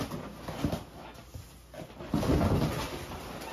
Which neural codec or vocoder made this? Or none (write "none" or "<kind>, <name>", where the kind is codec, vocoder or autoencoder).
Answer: none